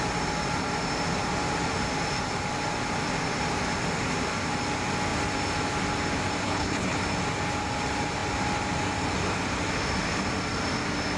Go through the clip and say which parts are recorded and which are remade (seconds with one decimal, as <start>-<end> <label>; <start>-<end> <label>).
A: 0.0-6.4 recorded; 6.4-7.0 remade; 7.0-11.2 recorded